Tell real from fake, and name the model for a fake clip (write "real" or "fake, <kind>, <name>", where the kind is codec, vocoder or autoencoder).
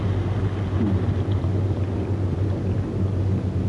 real